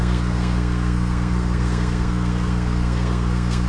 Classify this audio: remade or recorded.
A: remade